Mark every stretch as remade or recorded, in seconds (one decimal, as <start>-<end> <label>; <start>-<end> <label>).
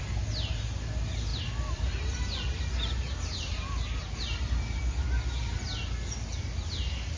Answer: 0.0-7.2 recorded